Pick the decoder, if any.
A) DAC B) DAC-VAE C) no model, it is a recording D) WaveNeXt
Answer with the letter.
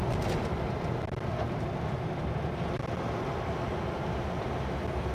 C